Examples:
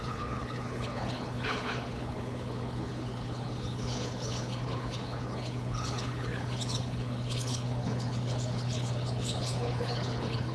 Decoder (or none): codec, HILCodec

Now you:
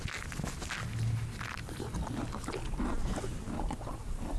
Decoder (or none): none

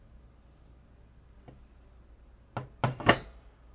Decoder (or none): none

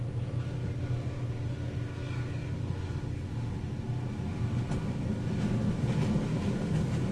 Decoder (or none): none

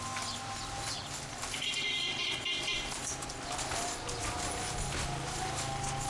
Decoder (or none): none